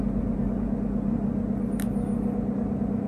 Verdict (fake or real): real